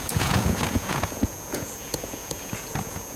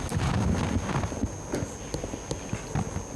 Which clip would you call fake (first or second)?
first